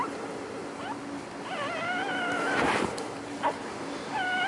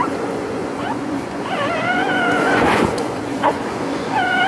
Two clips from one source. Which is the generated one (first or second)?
second